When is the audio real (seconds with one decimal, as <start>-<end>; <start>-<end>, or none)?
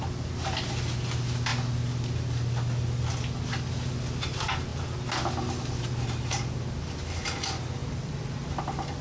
0.0-7.8; 8.6-9.0